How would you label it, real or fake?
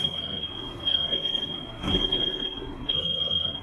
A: fake